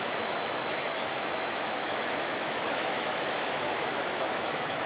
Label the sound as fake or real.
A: fake